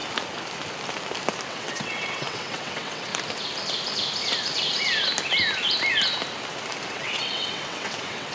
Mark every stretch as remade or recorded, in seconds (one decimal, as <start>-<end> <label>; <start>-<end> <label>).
0.0-1.5 recorded; 1.5-3.1 remade; 3.1-6.9 recorded; 6.9-8.3 remade